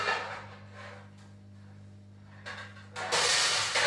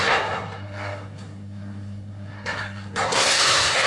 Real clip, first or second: first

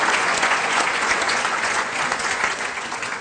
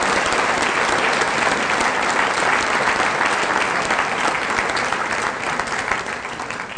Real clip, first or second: second